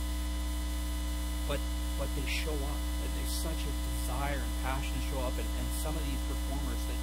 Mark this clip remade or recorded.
recorded